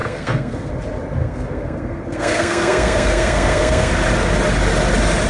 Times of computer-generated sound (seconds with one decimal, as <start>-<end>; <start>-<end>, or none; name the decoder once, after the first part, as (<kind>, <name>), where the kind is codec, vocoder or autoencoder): 0.0-0.7 (codec, SNAC); 1.2-3.9